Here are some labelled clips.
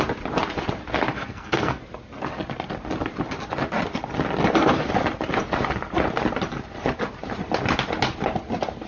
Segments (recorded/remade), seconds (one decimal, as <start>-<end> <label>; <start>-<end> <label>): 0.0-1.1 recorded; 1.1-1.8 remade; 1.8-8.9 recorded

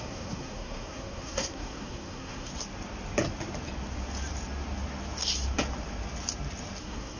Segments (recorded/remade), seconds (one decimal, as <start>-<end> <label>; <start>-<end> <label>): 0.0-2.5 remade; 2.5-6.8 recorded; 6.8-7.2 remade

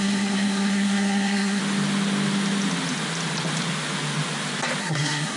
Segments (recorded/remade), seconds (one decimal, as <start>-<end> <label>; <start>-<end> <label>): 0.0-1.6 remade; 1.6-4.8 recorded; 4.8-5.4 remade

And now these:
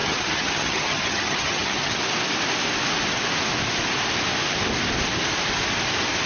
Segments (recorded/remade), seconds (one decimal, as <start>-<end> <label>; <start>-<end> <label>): 0.0-2.0 remade; 2.0-6.3 recorded

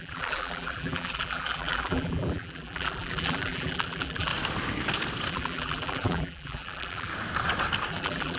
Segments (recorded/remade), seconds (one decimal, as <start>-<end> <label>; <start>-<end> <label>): 0.0-4.3 remade; 4.3-5.3 recorded; 5.3-7.1 remade; 7.1-7.9 recorded; 7.9-8.4 remade

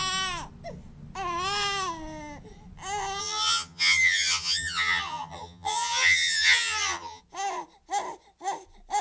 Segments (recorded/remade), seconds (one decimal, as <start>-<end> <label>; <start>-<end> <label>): 0.0-3.2 recorded; 3.2-7.2 remade; 7.2-9.0 recorded

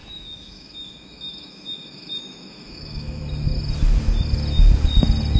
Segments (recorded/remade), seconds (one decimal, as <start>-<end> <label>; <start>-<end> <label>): 0.0-3.2 remade; 3.2-5.4 recorded

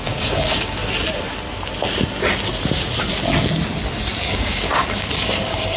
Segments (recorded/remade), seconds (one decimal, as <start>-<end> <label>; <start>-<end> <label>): 0.0-0.8 remade; 0.8-4.3 recorded; 4.3-5.8 remade